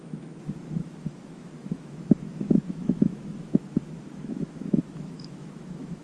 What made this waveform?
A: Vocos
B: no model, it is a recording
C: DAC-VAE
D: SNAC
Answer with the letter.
C